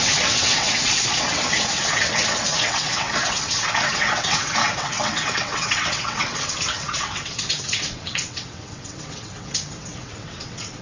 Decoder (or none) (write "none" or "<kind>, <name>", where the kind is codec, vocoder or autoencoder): vocoder, WaveNeXt